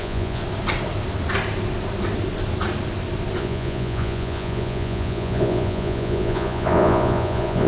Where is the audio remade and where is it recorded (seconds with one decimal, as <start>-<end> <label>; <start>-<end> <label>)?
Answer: 0.0-0.4 remade; 0.4-3.4 recorded; 3.4-7.7 remade